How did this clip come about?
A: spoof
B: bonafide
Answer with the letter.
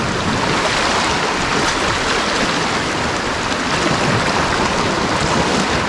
B